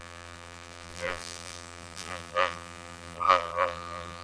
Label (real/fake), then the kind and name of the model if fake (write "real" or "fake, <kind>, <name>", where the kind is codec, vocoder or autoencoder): fake, vocoder, BigVGAN v2